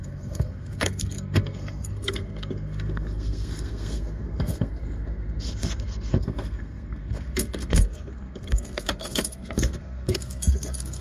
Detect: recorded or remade remade